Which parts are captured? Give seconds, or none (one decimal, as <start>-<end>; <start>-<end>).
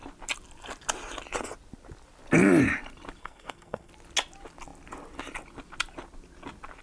0.0-3.2; 3.9-6.8